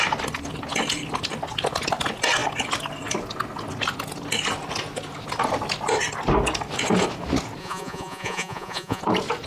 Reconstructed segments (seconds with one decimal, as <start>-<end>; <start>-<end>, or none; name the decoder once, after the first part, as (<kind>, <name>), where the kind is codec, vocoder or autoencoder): 7.6-9.0 (vocoder, Vocos)